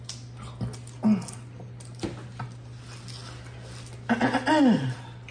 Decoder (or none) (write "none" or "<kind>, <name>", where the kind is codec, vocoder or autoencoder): none